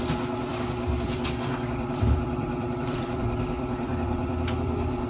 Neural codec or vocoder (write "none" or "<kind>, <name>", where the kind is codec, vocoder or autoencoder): vocoder, BigVGAN v2